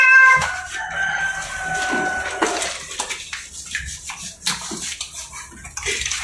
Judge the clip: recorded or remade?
recorded